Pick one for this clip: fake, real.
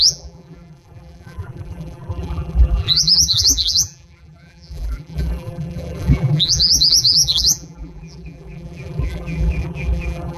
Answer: fake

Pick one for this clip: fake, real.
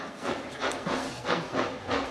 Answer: fake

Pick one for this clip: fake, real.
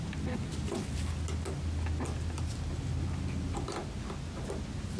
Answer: real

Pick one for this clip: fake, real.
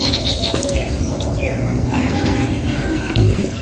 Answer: fake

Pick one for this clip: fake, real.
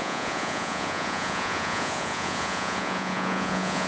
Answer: fake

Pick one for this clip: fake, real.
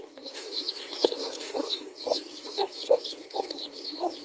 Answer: fake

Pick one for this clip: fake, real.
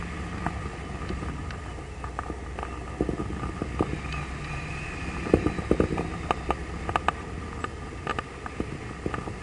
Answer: real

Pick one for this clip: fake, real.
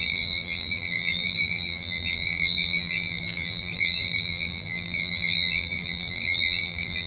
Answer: fake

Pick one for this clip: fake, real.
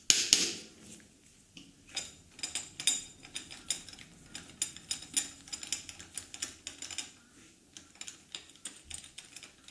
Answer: real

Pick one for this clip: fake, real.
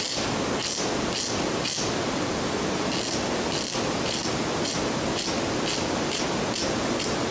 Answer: real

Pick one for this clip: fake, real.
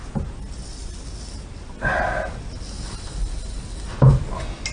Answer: real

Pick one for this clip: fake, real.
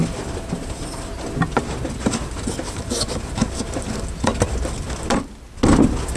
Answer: real